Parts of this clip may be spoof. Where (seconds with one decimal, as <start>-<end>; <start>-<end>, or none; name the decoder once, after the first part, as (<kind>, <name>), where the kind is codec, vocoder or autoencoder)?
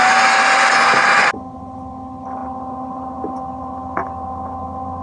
none